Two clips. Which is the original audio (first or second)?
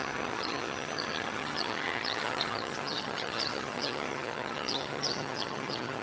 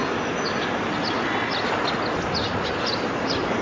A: second